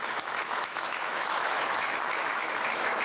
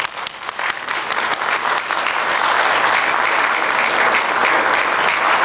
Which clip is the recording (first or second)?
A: second